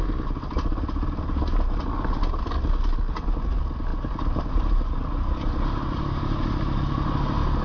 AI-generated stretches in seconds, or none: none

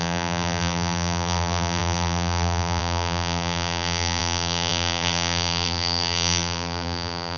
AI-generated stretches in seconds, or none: 0.0-7.4 (vocoder, BigVGAN v2)

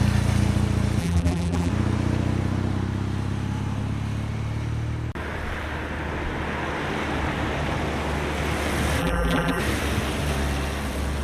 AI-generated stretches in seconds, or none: 1.0-1.7 (vocoder, BigVGAN v2); 9.0-9.6

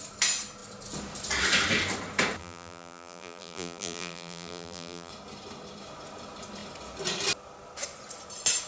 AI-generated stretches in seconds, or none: 2.4-5.1 (vocoder, BigVGAN v2)

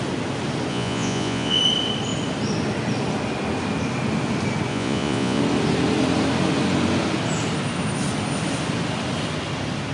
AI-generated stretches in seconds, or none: 0.7-1.6 (vocoder, Vocos); 4.7-5.4

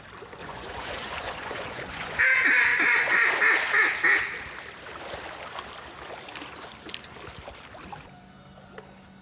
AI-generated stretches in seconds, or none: 0.4-2.2 (vocoder, Vocos); 2.7-3.3